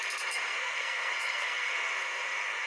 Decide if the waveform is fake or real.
fake